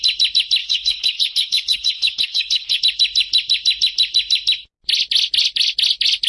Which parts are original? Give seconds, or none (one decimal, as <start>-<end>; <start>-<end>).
0.0-0.6; 2.8-6.3